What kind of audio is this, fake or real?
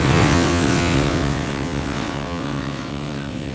fake